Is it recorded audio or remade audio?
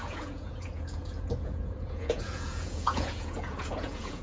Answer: remade